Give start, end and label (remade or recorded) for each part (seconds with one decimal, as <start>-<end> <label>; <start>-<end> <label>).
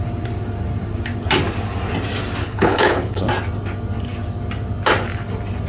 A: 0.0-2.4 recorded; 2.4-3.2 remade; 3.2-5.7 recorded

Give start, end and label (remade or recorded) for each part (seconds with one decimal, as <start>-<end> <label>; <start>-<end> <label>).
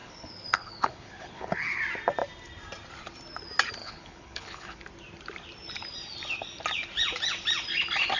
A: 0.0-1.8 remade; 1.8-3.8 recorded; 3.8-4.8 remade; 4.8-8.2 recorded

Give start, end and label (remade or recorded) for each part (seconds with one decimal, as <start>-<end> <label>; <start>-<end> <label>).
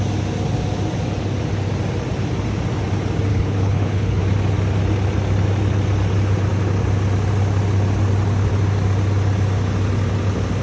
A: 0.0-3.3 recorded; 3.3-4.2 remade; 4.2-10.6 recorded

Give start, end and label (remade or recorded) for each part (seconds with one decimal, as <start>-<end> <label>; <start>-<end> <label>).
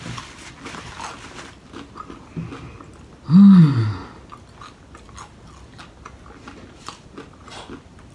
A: 0.0-8.1 recorded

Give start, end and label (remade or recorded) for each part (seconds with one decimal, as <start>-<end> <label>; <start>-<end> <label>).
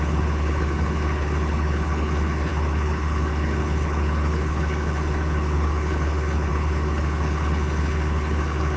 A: 0.0-8.8 remade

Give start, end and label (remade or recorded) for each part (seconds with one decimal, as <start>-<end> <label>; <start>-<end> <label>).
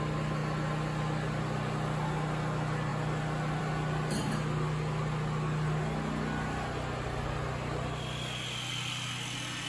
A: 0.0-9.7 recorded